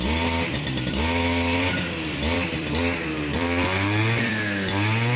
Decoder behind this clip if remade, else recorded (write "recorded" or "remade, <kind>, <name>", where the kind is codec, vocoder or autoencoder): remade, vocoder, BigVGAN v2